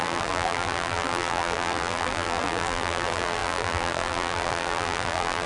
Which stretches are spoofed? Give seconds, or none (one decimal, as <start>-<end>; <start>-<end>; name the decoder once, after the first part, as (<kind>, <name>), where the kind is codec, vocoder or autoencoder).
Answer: 0.0-5.5 (vocoder, BigVGAN v2)